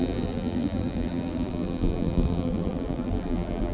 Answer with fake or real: fake